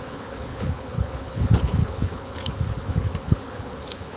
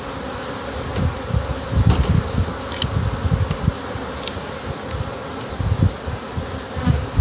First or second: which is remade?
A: first